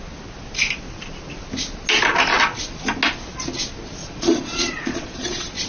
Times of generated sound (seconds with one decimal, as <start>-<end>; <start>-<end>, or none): 4.0-5.3